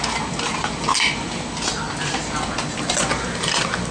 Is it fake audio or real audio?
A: real